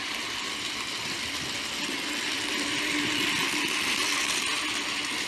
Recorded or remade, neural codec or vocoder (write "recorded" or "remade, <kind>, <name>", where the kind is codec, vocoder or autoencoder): recorded